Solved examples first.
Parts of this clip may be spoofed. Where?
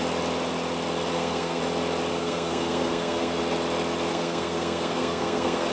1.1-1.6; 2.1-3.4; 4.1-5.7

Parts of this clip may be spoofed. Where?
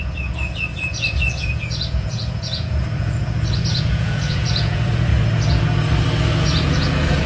0.0-5.1; 6.4-7.3